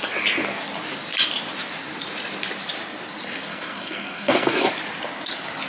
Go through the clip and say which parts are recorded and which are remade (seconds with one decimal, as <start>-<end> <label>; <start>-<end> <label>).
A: 0.0-3.5 recorded; 3.5-4.7 remade; 4.7-5.7 recorded